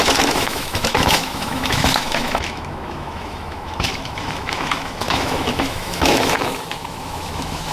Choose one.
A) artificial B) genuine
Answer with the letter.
A